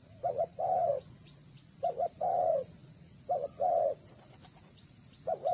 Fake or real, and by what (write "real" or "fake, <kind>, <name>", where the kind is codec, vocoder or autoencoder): fake, vocoder, Vocos